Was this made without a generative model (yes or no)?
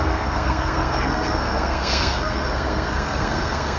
no